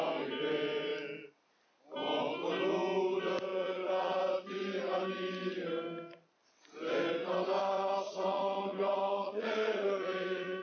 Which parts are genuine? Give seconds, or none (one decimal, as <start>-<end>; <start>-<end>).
0.0-3.5; 4.2-7.6